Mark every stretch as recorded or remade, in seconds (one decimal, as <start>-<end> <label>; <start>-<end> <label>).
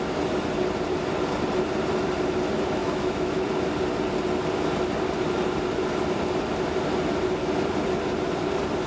0.0-2.8 recorded; 2.8-3.4 remade; 3.4-8.9 recorded